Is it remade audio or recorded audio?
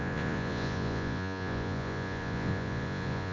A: remade